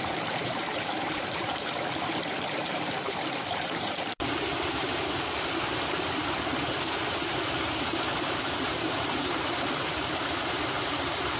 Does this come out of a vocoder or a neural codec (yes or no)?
yes